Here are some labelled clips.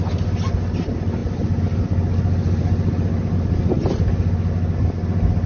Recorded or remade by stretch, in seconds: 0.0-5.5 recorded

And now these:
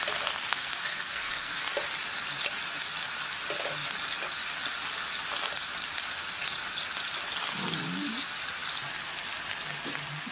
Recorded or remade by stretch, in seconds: 0.0-0.5 recorded; 0.5-1.6 remade; 1.6-10.3 recorded

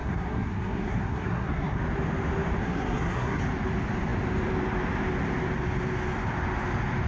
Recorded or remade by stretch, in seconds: 0.0-1.8 remade; 1.8-2.6 recorded; 2.6-3.4 remade; 3.4-7.1 recorded

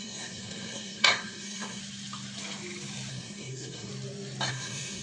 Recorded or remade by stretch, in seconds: 0.0-1.8 remade; 1.8-3.1 recorded; 3.1-3.9 remade; 3.9-4.5 recorded; 4.5-5.0 remade

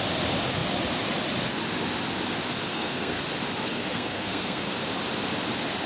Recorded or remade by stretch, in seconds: 0.0-2.7 recorded; 2.7-3.2 remade; 3.2-3.7 recorded; 3.7-4.7 remade; 4.7-5.9 recorded